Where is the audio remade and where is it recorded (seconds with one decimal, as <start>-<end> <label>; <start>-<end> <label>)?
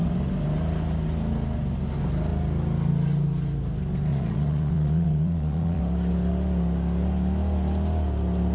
0.0-4.1 recorded; 4.1-5.8 remade; 5.8-8.5 recorded